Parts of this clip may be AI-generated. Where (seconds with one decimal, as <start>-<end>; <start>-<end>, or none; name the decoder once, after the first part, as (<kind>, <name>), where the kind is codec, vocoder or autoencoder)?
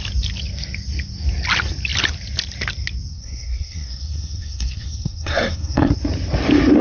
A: 3.1-5.9 (codec, SNAC)